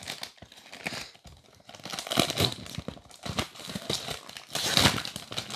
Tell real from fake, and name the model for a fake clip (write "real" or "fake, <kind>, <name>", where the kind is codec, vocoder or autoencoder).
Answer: real